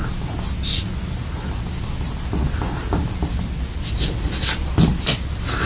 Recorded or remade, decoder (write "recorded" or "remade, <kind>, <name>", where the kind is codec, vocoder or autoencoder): recorded